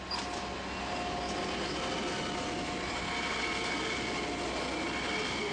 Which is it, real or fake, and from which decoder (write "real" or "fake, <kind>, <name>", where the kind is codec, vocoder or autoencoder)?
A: real